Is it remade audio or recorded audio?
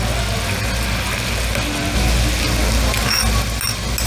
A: recorded